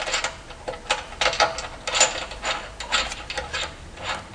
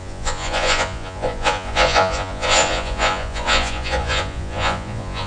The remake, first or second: second